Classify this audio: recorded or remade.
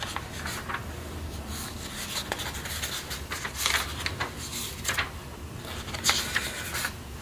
recorded